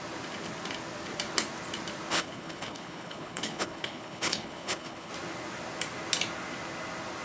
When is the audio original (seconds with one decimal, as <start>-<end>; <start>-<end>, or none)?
0.0-2.1; 5.1-7.2